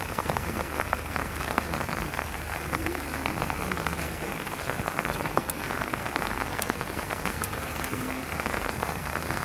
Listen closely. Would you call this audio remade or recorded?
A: remade